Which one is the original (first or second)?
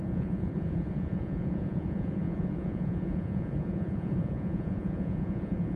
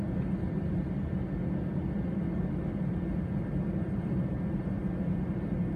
second